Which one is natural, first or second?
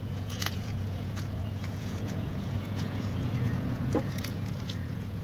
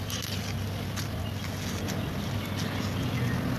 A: second